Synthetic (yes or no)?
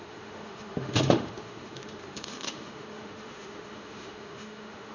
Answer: yes